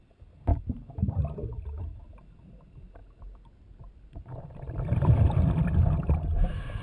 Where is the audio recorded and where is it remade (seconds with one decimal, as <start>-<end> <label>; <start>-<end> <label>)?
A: 0.0-0.5 recorded; 0.5-2.1 remade; 2.1-3.0 recorded; 3.0-5.4 remade; 5.4-6.8 recorded